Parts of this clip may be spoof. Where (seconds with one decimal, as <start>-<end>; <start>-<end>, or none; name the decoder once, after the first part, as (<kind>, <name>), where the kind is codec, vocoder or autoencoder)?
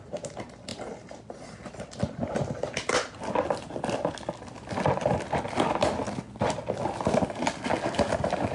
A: none